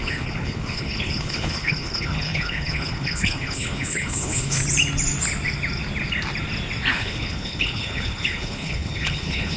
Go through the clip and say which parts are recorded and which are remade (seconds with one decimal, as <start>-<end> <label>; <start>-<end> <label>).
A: 0.0-4.6 remade; 4.6-6.9 recorded; 6.9-9.6 remade